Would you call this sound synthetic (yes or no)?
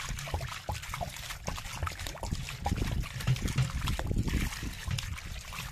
no